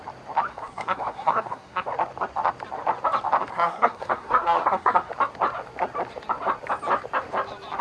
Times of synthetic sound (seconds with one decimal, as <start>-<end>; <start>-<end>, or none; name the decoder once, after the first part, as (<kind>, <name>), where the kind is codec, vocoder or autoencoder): 0.5-1.9 (codec, SNAC); 3.5-5.1